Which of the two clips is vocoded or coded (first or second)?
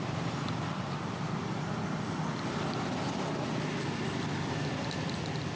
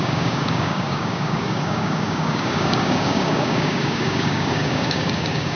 second